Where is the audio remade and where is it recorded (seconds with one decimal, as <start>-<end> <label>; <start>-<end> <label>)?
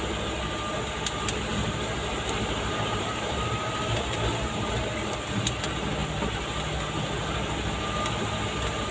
0.0-1.5 recorded; 1.5-5.1 remade; 5.1-8.9 recorded